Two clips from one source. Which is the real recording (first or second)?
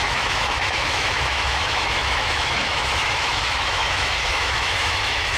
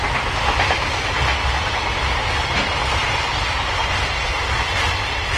second